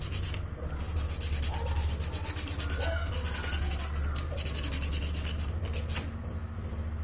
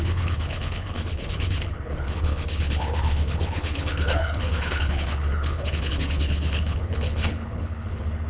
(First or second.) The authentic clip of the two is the first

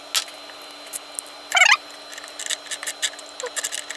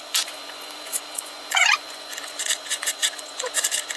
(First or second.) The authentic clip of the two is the first